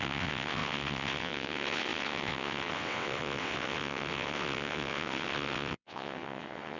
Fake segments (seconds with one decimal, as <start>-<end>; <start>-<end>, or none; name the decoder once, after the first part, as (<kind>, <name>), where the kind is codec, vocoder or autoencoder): 0.0-6.8 (vocoder, WaveNeXt)